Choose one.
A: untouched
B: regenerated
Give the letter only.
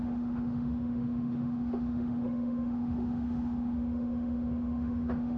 B